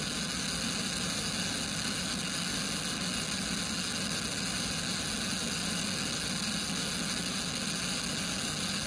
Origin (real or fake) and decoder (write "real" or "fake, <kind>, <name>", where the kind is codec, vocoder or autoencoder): real